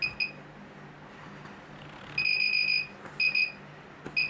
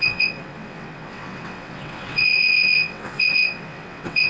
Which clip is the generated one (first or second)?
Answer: second